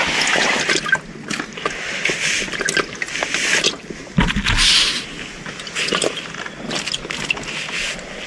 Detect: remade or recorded recorded